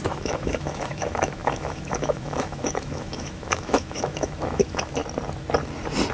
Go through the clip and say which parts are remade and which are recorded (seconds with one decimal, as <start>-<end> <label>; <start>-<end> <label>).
0.0-5.0 remade; 5.0-6.1 recorded